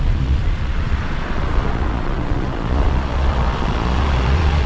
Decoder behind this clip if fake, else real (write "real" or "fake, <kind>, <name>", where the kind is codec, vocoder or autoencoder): fake, vocoder, Vocos